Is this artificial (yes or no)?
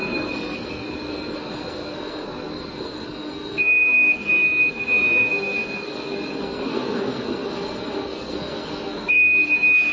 yes